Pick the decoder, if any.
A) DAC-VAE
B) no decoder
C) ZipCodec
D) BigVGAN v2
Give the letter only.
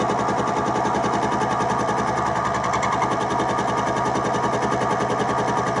B